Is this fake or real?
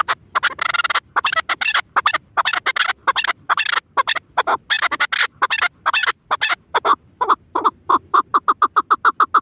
real